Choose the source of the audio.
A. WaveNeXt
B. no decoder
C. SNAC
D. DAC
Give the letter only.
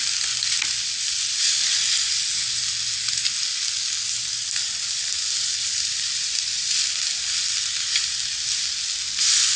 B